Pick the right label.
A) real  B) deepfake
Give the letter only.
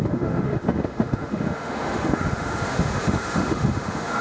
B